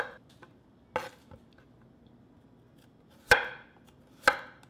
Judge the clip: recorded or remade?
recorded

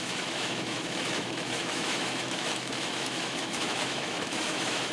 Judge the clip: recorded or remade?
remade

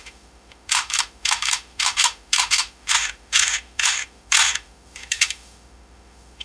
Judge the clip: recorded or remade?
remade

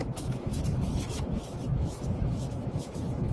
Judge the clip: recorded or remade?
remade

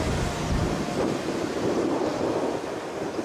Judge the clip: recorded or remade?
recorded